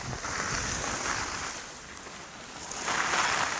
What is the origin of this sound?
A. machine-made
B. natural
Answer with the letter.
B